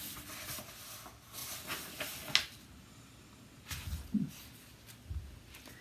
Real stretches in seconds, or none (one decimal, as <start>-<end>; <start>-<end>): 0.0-5.8